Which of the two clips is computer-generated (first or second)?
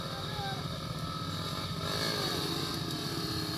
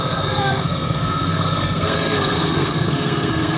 second